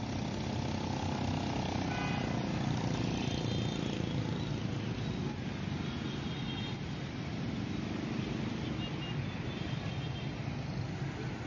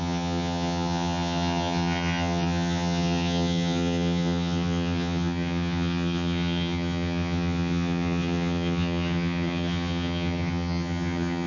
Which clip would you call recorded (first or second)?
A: first